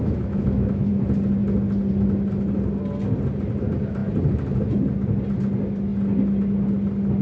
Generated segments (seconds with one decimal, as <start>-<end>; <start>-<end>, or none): 0.0-0.9